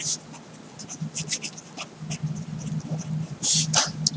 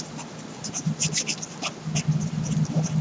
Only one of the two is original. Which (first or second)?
first